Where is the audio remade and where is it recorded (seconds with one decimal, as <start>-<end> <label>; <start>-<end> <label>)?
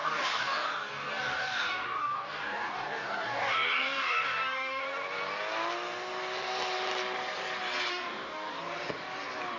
0.0-4.8 remade; 4.8-7.9 recorded; 7.9-8.5 remade; 8.5-9.6 recorded